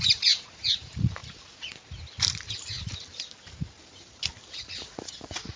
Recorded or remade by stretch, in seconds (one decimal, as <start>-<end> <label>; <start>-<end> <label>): 0.0-1.2 remade; 1.2-4.6 recorded; 4.6-5.6 remade